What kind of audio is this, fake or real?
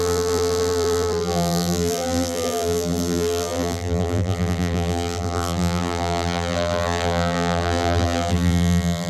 fake